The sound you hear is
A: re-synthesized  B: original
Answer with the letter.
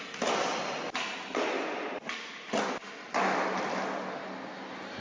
B